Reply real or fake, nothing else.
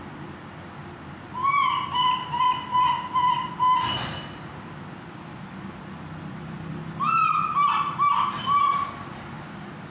real